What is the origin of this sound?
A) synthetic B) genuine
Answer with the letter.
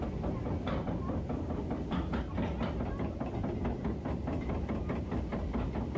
B